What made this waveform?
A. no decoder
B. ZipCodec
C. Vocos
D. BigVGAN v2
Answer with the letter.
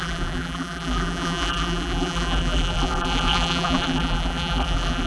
D